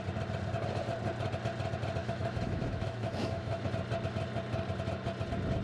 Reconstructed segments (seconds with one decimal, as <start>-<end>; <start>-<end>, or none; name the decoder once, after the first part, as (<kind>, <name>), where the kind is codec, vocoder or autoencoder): 2.0-3.6 (autoencoder, DAC-VAE)